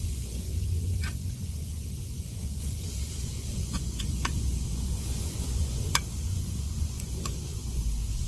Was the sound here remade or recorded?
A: remade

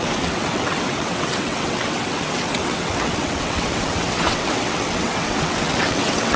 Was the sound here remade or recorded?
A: remade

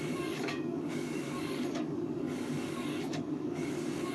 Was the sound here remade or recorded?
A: remade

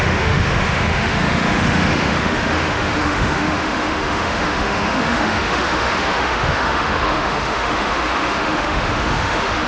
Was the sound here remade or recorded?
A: remade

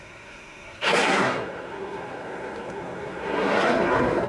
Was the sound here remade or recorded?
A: remade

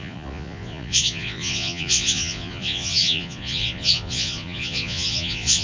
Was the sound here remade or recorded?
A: remade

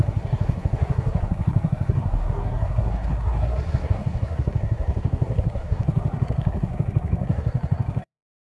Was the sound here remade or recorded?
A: remade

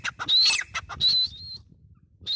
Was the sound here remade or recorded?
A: recorded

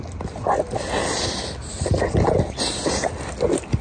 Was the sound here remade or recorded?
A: recorded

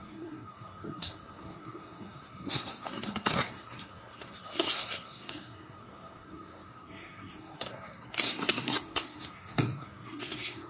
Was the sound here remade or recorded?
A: remade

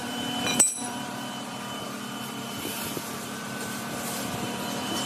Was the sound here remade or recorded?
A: remade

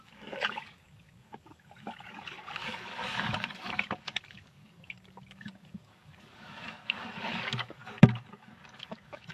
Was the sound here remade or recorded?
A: remade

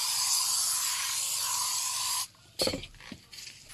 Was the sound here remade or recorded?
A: recorded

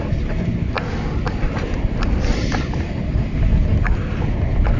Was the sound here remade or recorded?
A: recorded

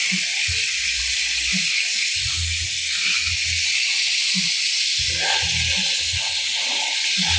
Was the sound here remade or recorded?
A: recorded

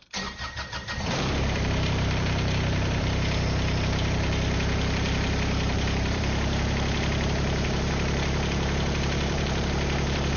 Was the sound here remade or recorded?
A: remade